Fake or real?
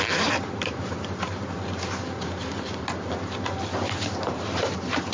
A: fake